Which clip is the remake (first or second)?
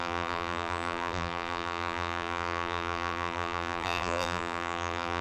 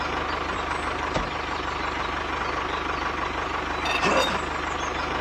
first